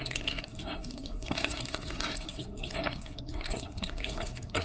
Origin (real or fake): fake